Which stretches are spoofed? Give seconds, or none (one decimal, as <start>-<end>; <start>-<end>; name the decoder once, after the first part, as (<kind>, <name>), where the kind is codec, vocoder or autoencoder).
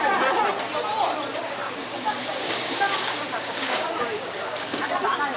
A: 1.6-4.8 (codec, DAC)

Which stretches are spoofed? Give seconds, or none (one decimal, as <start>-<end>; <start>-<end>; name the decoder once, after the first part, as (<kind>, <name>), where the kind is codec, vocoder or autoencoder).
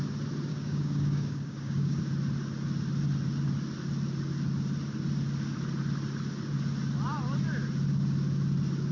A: 0.5-2.0 (codec, DAC)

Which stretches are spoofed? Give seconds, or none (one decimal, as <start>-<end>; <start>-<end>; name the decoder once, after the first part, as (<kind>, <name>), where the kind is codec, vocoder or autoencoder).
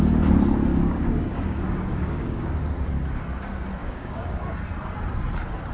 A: 0.7-2.5 (codec, DAC); 3.8-4.3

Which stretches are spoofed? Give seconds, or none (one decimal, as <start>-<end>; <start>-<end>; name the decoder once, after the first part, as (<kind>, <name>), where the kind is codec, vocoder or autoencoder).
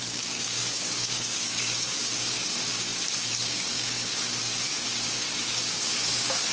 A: 0.0-2.9 (codec, DAC); 3.4-6.5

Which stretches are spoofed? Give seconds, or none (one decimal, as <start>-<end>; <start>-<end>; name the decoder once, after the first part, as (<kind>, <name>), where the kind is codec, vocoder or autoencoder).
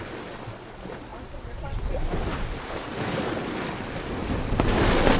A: none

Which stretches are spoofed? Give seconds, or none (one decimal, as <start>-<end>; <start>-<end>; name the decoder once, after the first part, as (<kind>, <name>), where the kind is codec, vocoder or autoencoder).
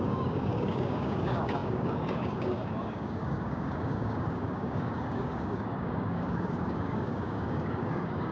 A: 0.0-8.3 (codec, DAC)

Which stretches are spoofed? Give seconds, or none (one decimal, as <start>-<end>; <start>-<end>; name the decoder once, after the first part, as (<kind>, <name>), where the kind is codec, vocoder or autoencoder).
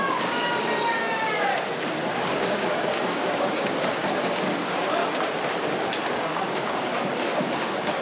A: 0.0-1.5 (codec, DAC); 2.1-5.0; 6.1-6.9; 7.4-8.0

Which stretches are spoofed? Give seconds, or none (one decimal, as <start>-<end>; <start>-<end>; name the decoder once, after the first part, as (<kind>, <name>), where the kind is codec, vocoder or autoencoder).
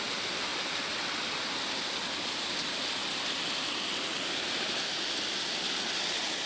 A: none